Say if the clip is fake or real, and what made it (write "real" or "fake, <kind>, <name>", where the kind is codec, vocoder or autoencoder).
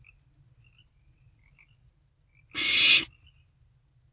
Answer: real